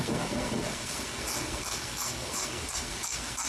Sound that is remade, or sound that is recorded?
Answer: remade